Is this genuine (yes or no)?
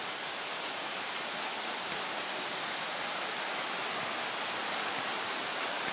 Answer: yes